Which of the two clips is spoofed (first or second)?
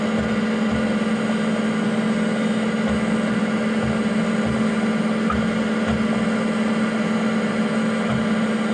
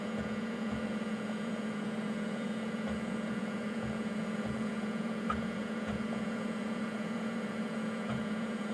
second